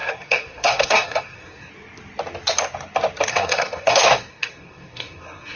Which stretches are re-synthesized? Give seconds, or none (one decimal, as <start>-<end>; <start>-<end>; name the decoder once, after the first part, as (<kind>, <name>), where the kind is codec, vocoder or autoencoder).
0.0-1.7 (codec, SNAC); 3.3-5.6